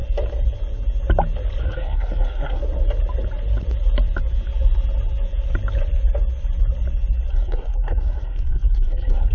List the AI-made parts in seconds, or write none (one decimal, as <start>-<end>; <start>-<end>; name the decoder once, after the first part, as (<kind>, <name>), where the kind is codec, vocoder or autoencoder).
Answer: 1.6-2.6 (codec, SNAC); 7.3-9.3